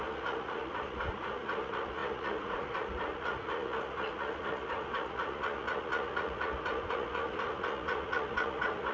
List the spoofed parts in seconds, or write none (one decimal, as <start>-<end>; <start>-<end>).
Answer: 0.0-8.9